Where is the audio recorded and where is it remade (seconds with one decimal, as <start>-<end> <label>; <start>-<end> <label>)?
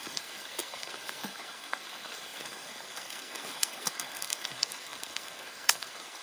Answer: 0.0-6.2 remade